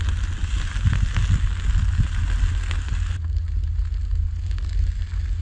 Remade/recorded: recorded